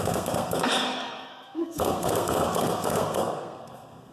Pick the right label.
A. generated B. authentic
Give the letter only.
A